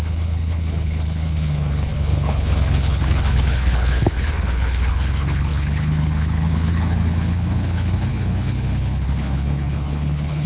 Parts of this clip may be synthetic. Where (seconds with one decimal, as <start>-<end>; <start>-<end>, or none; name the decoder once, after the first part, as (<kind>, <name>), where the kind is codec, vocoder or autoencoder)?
0.0-10.5 (codec, HILCodec)